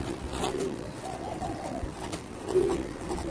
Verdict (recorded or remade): remade